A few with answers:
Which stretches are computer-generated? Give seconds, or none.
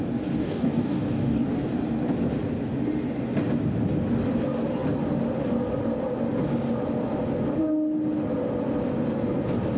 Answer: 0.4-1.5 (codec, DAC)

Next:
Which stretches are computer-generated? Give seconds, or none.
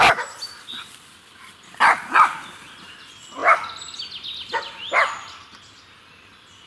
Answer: none